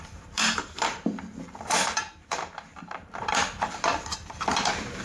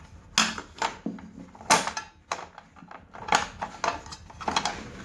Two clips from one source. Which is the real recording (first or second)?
second